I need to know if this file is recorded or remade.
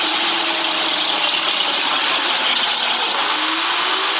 recorded